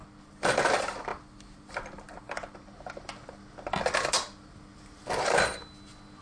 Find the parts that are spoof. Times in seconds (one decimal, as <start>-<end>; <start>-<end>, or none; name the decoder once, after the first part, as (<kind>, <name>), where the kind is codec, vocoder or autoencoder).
none